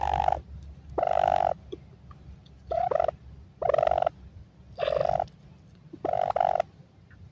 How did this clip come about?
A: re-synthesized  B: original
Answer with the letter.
B